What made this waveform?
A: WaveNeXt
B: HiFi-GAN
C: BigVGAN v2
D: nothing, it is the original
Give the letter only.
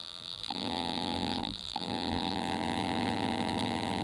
C